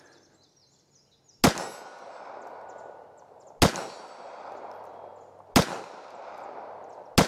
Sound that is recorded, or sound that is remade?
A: recorded